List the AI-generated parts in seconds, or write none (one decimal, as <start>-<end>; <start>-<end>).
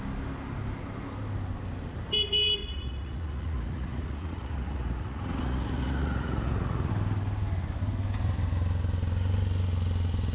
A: 2.6-6.9